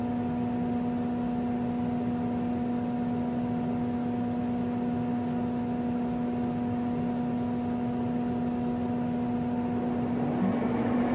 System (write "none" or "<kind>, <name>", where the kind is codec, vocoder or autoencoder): none